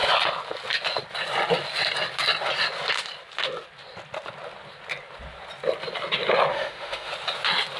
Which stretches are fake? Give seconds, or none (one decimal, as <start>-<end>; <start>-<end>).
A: 6.5-7.1